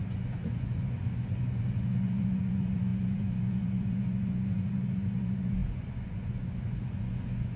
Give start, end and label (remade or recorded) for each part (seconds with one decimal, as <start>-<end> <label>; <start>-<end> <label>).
0.0-7.6 remade